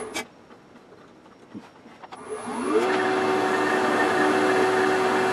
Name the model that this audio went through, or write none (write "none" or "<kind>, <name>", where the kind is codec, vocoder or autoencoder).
none